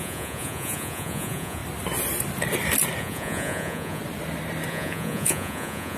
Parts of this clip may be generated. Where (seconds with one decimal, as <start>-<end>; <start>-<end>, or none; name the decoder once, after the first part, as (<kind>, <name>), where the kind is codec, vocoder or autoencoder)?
0.0-1.6 (vocoder, Vocos); 3.0-4.0; 4.7-6.0